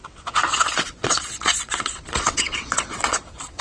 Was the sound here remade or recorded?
remade